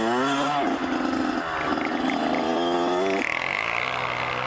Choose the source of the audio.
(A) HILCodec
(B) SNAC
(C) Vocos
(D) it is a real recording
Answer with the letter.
D